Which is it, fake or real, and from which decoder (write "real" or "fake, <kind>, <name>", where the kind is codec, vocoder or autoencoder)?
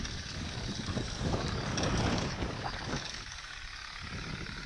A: fake, codec, DAC